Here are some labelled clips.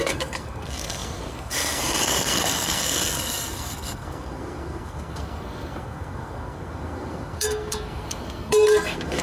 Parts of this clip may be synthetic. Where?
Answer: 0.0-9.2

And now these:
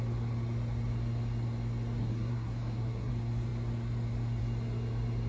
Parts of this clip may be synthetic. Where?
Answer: 2.0-3.1

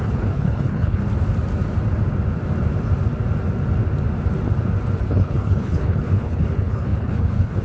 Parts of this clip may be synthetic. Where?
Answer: 0.0-1.0; 5.0-7.6

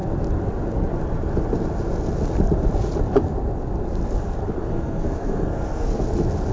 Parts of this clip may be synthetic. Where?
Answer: 4.6-6.0

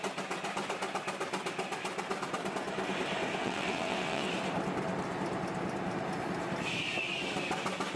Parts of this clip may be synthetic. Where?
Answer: 3.4-4.3

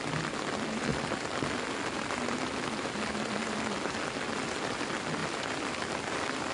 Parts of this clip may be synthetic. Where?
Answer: none